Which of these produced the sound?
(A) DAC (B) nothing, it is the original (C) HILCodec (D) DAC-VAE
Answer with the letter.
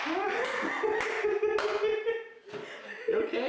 B